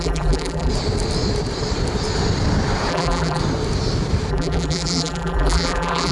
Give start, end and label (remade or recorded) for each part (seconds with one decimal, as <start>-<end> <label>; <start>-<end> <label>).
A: 0.0-0.7 remade; 0.7-2.9 recorded; 2.9-3.4 remade; 3.4-4.3 recorded; 4.3-6.1 remade